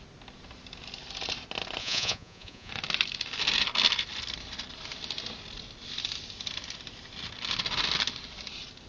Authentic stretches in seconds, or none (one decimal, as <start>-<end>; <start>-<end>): 0.0-1.8; 2.7-8.9